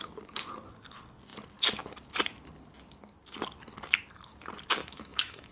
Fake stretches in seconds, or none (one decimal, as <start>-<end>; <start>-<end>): 4.8-5.5